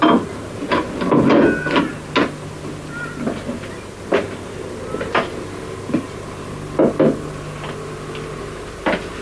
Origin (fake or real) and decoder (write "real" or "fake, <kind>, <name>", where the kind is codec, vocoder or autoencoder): real